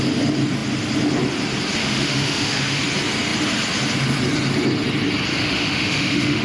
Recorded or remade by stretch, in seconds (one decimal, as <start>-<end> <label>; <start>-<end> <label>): 0.0-1.8 recorded; 1.8-2.8 remade; 2.8-5.3 recorded; 5.3-6.4 remade